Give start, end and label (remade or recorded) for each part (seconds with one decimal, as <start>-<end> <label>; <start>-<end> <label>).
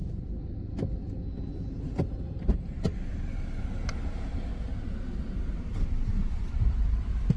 0.0-2.0 recorded; 2.0-4.5 remade; 4.5-5.2 recorded; 5.2-7.4 remade